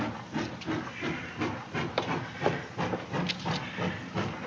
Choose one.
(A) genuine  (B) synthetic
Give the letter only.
A